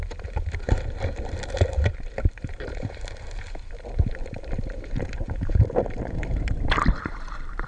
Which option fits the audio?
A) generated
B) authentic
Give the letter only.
A